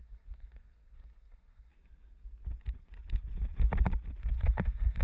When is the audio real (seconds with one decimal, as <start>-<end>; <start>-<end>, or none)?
1.7-4.2